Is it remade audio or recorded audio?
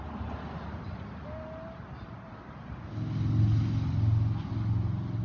recorded